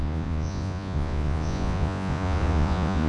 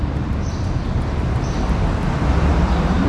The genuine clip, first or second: second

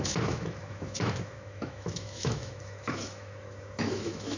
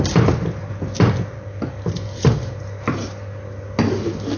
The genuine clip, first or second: second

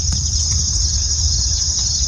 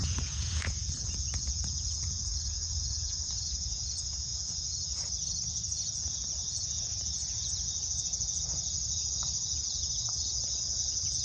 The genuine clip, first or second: first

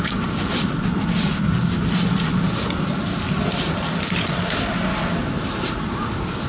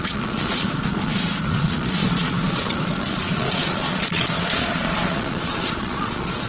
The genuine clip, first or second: first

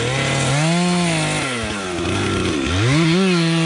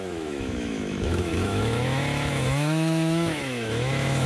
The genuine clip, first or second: first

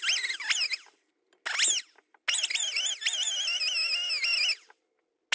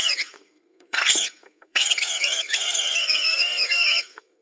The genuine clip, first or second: first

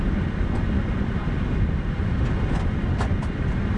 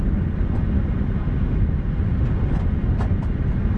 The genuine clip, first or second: second